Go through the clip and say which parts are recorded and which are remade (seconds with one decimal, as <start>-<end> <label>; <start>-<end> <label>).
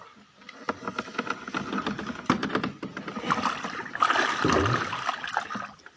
0.0-6.0 recorded